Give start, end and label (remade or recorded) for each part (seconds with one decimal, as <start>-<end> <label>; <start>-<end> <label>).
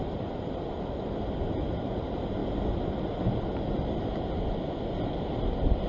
0.0-5.9 recorded